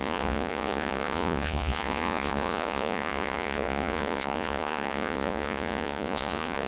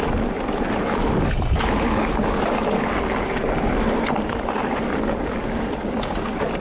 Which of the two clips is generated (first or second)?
first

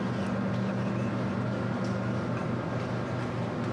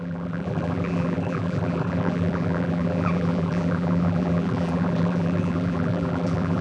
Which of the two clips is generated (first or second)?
second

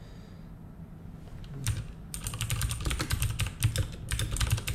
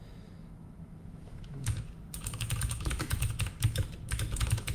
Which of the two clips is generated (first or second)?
second